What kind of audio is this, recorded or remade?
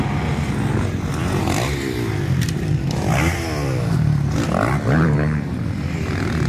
recorded